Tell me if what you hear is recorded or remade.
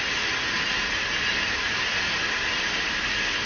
recorded